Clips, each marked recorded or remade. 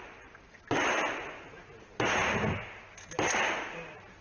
recorded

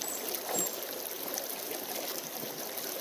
recorded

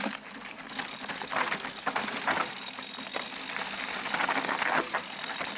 recorded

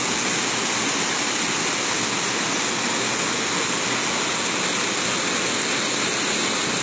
recorded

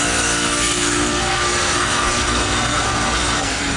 remade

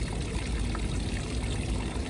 recorded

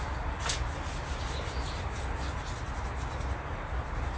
recorded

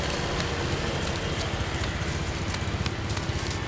recorded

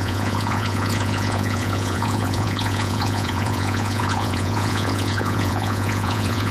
remade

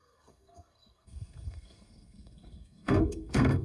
remade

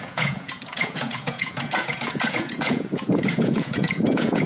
remade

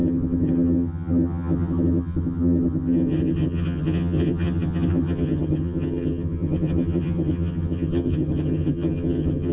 remade